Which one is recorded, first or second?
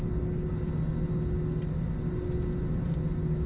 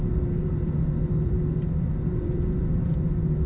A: first